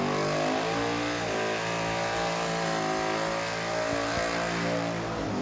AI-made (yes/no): no